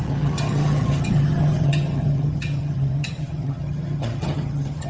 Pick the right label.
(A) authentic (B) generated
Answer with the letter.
B